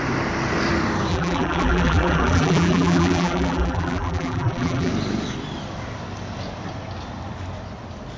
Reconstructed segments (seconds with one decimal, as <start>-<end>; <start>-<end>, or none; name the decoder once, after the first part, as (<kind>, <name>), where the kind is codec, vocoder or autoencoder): 1.1-4.9 (vocoder, BigVGAN v2)